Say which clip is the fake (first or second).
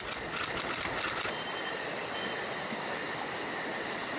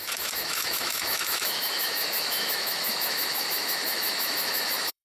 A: second